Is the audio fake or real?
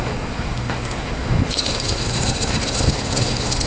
fake